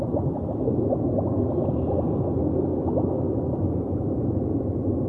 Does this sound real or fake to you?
real